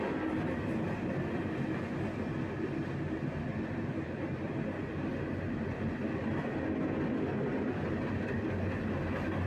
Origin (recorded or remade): recorded